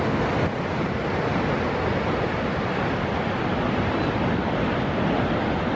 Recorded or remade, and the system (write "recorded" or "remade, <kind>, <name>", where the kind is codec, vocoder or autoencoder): recorded